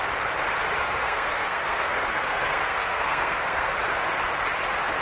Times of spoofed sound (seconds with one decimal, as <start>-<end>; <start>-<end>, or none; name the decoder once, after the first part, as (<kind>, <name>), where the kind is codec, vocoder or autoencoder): 0.8-3.7 (codec, SNAC)